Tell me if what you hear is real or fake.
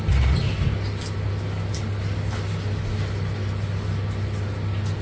real